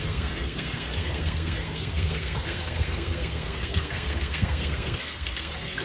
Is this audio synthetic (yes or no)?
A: yes